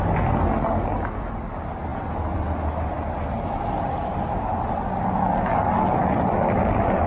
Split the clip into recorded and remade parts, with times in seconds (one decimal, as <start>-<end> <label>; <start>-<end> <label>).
0.0-7.1 recorded